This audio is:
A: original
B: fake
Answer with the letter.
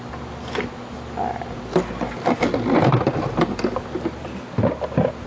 A